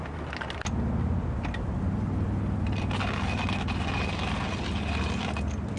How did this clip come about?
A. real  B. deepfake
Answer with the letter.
A